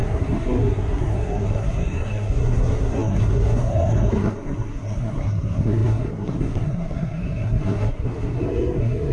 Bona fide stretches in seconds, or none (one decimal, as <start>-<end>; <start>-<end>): none